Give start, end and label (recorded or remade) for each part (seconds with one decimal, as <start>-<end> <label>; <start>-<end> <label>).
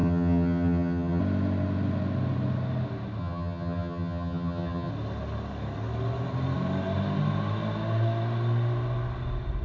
0.0-1.2 remade; 1.2-3.2 recorded; 3.2-4.9 remade; 4.9-9.6 recorded